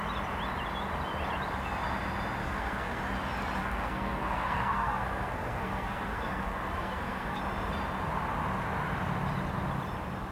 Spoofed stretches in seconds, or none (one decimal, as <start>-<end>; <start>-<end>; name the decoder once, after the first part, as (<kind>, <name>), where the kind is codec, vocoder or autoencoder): 2.4-3.0 (codec, SNAC); 3.6-7.4